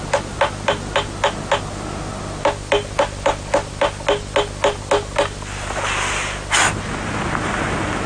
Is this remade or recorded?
recorded